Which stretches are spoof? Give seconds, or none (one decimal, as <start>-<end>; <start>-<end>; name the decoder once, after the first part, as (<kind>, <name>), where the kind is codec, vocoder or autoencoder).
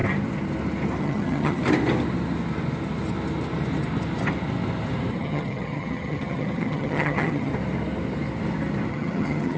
1.0-1.6 (vocoder, HiFi-GAN); 5.2-7.5; 8.9-9.6